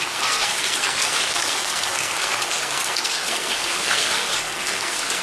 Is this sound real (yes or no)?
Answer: no